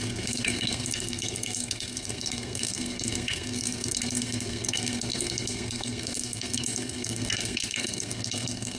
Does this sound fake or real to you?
fake